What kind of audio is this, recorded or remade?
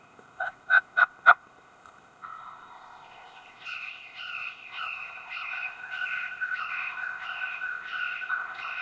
remade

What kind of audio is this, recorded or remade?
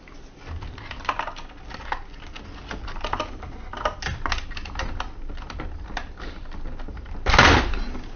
recorded